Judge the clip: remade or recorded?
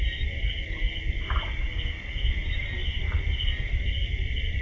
recorded